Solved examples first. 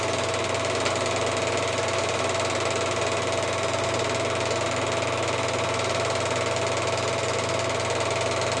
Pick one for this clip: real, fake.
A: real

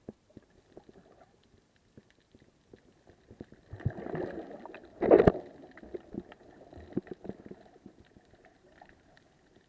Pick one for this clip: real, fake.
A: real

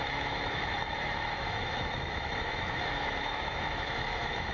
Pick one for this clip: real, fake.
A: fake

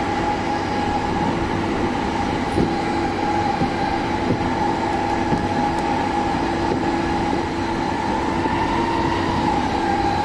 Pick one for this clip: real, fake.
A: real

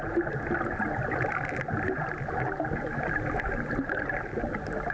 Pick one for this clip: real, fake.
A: real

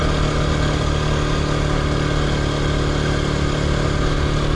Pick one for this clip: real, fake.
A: real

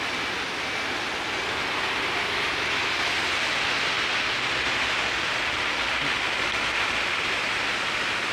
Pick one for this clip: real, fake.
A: real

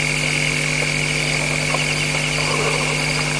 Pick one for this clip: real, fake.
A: real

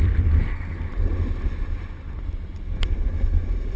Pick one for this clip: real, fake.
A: real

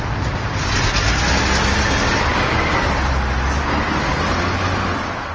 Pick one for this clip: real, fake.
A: real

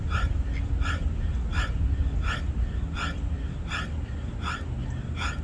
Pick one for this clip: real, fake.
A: real